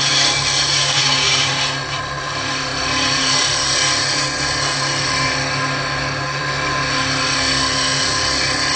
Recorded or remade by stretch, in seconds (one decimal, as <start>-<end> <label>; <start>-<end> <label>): 0.0-0.7 recorded; 0.7-1.5 remade; 1.5-8.8 recorded